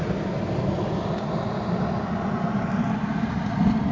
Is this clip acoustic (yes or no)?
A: yes